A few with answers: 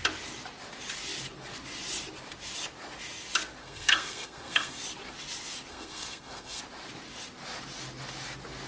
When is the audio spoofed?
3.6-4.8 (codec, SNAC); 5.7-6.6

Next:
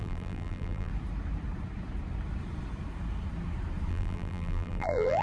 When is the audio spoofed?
0.0-0.9 (vocoder, BigVGAN v2); 3.9-5.2